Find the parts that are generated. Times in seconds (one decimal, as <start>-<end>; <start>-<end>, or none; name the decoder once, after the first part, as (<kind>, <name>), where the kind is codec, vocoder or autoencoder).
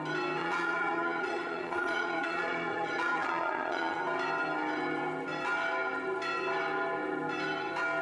0.4-4.0 (vocoder, Vocos)